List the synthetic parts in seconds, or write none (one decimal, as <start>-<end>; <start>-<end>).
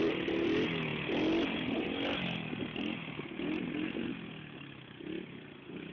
none